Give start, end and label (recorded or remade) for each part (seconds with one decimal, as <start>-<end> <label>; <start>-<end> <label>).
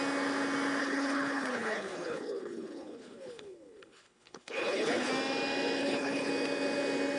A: 0.0-0.8 recorded; 0.8-5.1 remade; 5.1-5.8 recorded; 5.8-6.3 remade; 6.3-7.2 recorded